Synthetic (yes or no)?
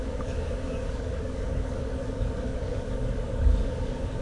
yes